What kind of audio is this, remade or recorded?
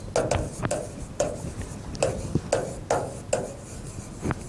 recorded